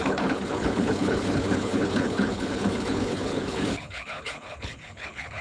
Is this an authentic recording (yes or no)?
no